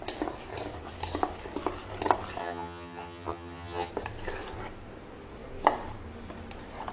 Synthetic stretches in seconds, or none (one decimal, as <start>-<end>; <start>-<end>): 2.4-3.9